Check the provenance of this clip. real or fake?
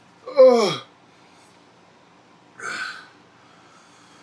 real